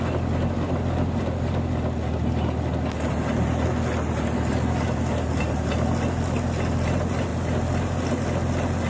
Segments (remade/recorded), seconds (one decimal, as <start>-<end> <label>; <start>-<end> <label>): 0.0-8.9 recorded